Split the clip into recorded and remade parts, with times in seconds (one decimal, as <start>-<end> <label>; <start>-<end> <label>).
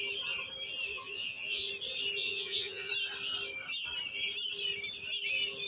0.0-0.9 recorded; 0.9-1.7 remade; 1.7-2.2 recorded; 2.2-2.9 remade; 2.9-5.7 recorded